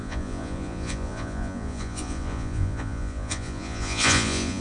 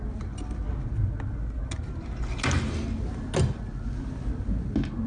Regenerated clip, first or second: first